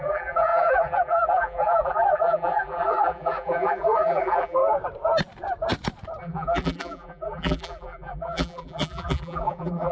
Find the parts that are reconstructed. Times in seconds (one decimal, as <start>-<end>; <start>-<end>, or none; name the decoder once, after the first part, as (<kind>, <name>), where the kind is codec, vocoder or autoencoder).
0.0-4.6 (vocoder, BigVGAN v2); 6.2-9.9